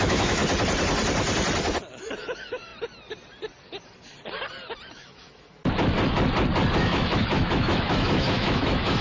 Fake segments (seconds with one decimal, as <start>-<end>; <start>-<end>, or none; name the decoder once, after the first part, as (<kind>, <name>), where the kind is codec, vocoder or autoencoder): 0.0-0.4 (autoencoder, DAC-VAE); 2.0-2.7; 4.9-5.6; 6.8-9.0